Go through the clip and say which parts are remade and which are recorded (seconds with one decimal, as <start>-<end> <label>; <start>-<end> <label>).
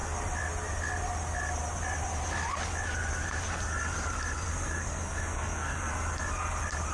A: 0.0-4.5 recorded; 4.5-5.9 remade; 5.9-6.9 recorded